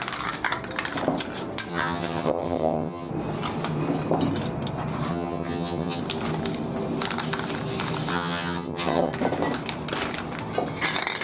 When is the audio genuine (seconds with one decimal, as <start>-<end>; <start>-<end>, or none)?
0.0-1.7; 3.1-5.1; 6.0-8.1; 9.1-11.2